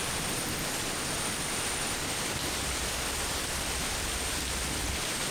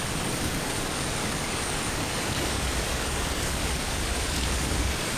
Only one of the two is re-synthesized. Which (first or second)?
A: second